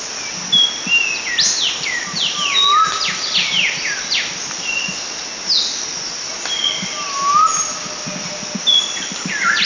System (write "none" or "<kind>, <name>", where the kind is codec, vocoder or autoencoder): none